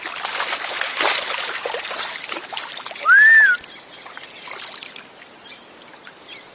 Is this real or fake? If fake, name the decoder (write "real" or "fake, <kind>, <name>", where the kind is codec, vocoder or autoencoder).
real